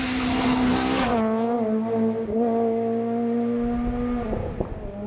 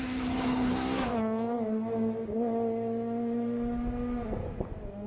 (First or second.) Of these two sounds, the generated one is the second